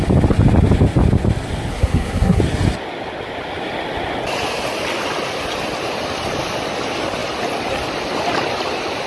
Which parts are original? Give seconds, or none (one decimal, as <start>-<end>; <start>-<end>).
0.0-1.7; 2.4-9.1